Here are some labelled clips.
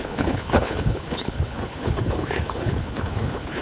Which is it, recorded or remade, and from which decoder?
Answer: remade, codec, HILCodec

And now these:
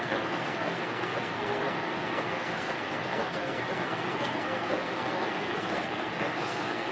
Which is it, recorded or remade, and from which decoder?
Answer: remade, codec, SNAC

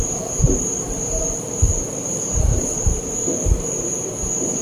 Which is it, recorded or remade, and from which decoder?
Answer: remade, vocoder, BigVGAN v2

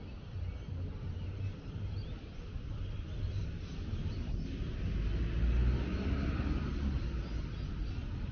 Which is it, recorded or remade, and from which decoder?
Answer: recorded